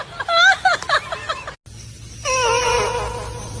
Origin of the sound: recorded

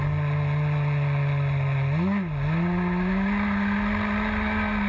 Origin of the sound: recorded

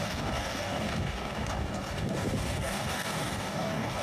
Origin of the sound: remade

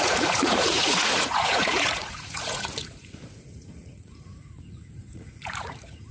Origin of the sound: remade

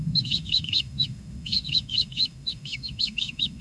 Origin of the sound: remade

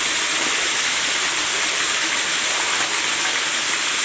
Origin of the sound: recorded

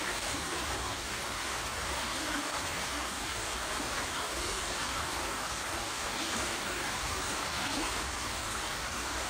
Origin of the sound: remade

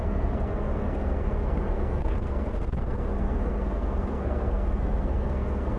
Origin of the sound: remade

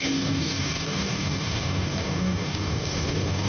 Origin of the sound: remade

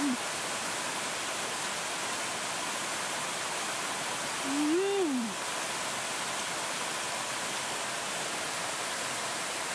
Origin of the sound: recorded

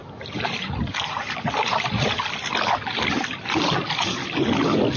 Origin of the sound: recorded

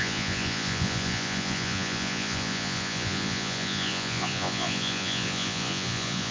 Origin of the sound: remade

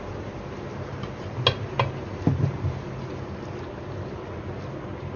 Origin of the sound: recorded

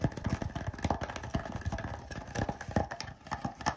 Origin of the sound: recorded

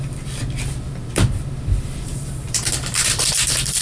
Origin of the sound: remade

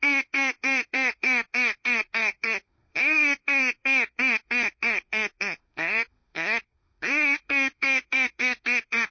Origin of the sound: remade